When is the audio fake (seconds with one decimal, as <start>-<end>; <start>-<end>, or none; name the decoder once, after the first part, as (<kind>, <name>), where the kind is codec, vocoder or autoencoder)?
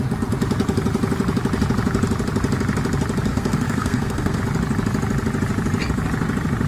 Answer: 3.3-4.4 (codec, SNAC)